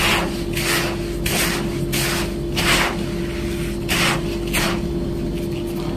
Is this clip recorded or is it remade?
recorded